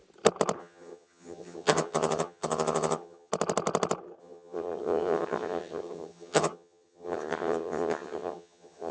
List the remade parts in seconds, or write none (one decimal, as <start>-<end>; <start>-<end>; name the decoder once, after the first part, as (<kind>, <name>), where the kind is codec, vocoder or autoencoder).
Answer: 0.6-3.3 (vocoder, HiFi-GAN); 4.2-8.9